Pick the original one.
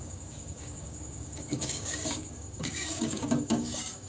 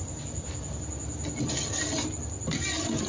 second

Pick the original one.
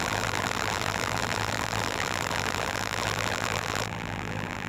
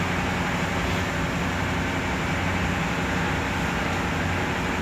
second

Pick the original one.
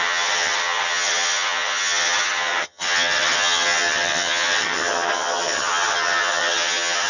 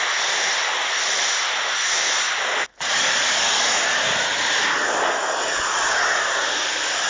second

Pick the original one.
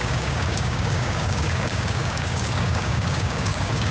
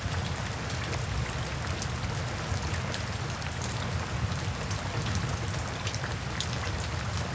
second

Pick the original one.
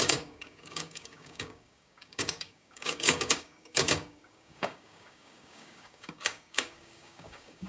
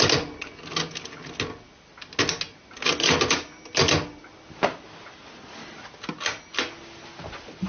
second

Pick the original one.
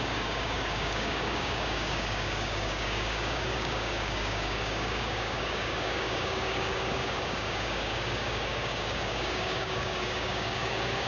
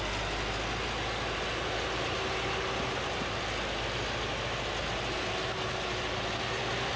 second